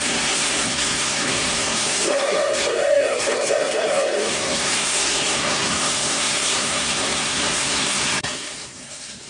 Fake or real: fake